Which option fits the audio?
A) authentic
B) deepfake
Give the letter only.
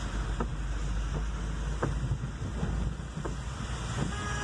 A